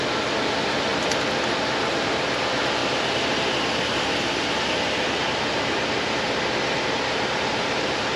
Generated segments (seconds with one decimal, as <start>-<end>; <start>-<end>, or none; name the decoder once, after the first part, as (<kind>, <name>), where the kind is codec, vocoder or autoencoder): 2.8-6.9 (vocoder, BigVGAN v2)